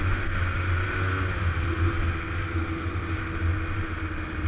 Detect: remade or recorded recorded